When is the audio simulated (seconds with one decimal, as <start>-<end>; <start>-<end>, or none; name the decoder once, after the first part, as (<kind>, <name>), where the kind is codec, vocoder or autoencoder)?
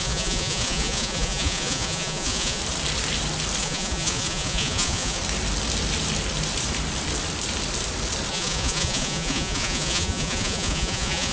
0.0-2.6 (vocoder, Vocos); 3.6-5.2; 8.3-11.3